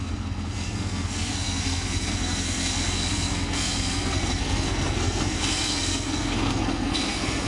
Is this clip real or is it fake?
fake